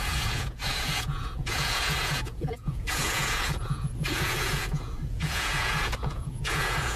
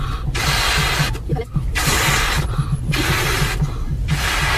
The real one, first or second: second